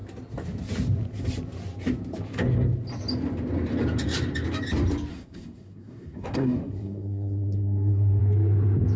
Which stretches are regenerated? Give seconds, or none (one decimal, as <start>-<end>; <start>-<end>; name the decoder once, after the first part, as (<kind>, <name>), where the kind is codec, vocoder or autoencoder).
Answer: 5.1-8.2 (codec, SNAC)